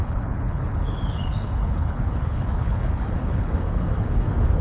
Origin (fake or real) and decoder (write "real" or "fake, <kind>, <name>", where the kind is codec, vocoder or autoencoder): fake, codec, HILCodec